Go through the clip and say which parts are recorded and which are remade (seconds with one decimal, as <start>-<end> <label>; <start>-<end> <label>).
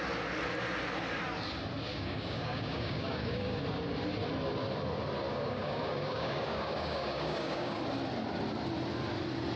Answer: 0.0-1.9 recorded; 1.9-3.6 remade; 3.6-5.3 recorded; 5.3-7.8 remade; 7.8-9.6 recorded